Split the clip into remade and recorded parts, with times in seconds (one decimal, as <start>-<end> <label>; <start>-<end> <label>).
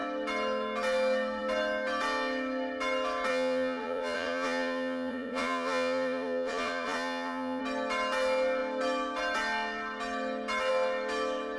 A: 0.0-3.3 recorded; 3.3-7.6 remade; 7.6-11.6 recorded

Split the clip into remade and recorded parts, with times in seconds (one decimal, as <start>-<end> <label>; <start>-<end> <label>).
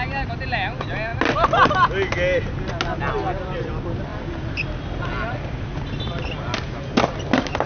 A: 0.0-7.7 recorded